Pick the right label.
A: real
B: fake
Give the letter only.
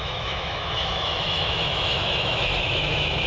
B